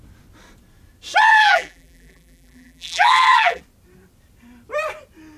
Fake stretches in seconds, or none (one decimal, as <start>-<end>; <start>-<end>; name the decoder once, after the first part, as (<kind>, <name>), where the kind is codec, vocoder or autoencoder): 1.3-3.6 (vocoder, BigVGAN v2)